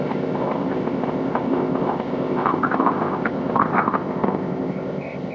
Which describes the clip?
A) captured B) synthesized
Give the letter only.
B